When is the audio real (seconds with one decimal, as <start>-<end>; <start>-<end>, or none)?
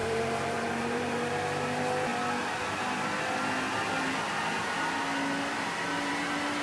1.3-6.6